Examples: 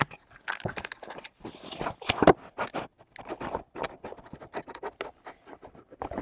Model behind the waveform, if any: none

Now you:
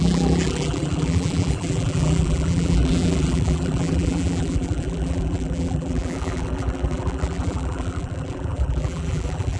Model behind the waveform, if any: vocoder, BigVGAN v2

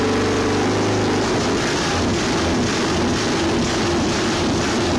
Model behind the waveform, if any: vocoder, BigVGAN v2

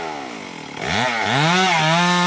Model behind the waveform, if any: none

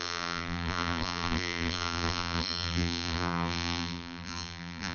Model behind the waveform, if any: vocoder, BigVGAN v2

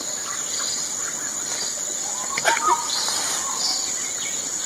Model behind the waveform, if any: none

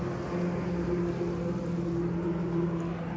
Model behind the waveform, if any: none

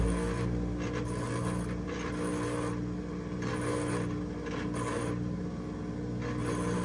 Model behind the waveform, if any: none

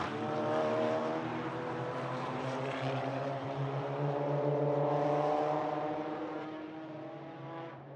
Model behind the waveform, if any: vocoder, BigVGAN v2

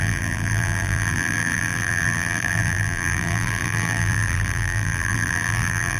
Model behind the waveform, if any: vocoder, BigVGAN v2